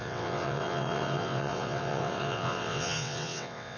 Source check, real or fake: fake